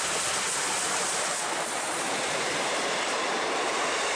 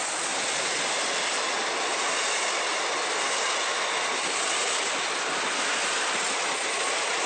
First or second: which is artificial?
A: first